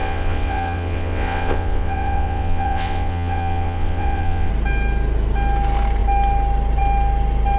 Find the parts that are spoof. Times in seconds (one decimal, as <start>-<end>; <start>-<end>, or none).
0.0-4.5